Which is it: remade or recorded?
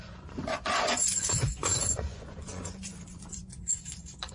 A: remade